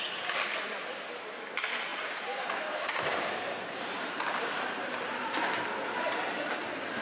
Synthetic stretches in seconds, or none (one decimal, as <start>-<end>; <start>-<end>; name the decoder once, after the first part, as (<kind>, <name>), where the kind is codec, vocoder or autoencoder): 1.9-5.4 (vocoder, BigVGAN v2)